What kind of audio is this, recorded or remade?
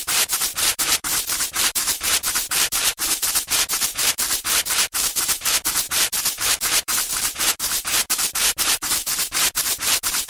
remade